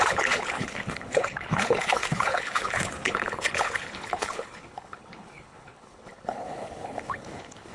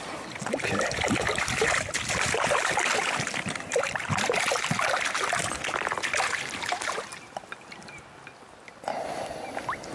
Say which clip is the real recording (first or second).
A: second